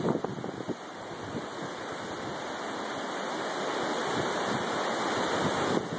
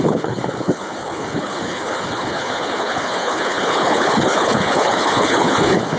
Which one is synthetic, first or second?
second